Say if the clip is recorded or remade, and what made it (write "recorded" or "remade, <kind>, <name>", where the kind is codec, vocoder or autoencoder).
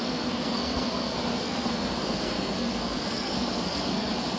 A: remade, codec, SNAC